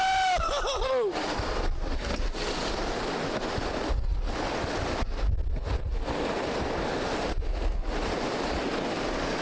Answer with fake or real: real